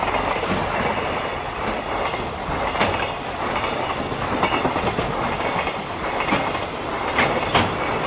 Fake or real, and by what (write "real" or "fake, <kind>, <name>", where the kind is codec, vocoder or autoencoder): real